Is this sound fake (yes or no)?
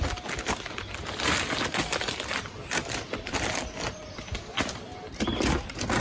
no